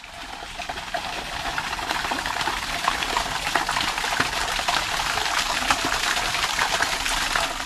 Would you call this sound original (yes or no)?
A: yes